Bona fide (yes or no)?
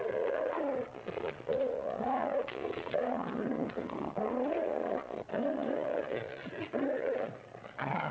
no